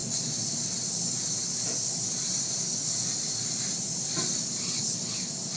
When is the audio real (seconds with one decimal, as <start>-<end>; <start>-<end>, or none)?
0.0-5.6